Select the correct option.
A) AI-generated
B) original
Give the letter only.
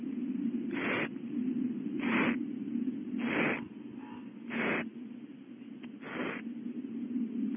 B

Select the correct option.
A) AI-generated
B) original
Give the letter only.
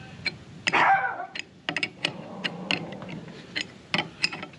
B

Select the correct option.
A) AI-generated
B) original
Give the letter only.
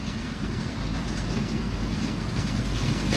A